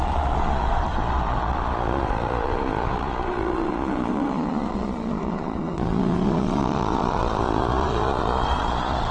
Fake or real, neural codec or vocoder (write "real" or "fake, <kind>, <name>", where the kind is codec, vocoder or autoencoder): fake, vocoder, Vocos